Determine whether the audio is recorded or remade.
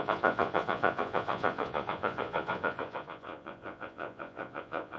remade